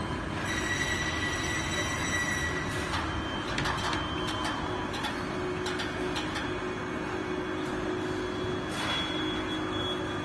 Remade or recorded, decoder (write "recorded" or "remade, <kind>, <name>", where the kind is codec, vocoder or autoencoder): recorded